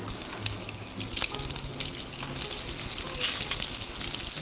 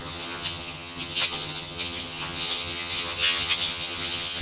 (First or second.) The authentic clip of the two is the first